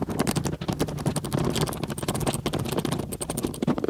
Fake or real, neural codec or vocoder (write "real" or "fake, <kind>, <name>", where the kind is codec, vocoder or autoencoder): real